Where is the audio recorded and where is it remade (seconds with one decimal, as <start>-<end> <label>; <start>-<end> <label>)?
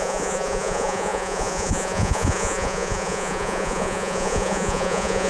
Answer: 0.0-5.3 remade